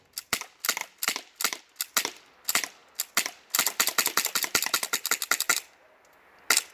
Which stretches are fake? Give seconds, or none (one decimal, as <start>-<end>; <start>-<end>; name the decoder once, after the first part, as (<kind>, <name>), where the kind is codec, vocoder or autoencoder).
none